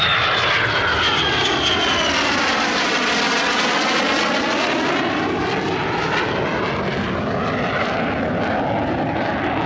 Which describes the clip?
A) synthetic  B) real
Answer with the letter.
B